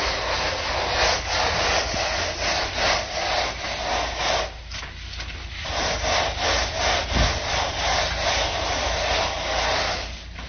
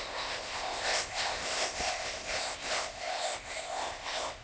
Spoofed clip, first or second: second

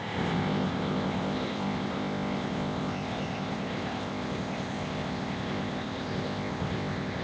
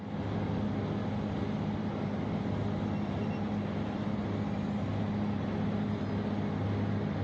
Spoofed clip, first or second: first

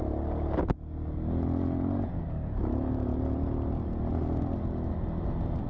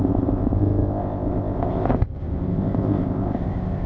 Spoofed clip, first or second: second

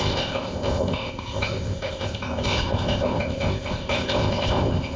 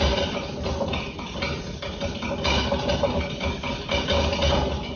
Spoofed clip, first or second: first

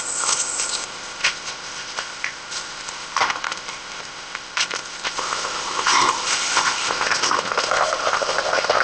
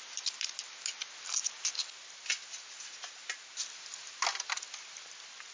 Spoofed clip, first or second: first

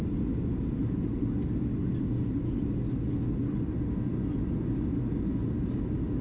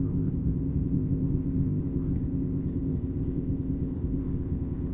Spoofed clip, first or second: second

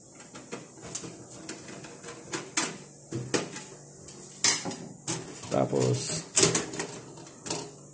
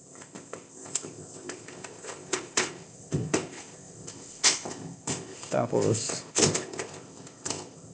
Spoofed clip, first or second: second